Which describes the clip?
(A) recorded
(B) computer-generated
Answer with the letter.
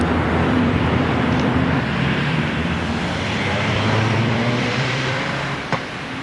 B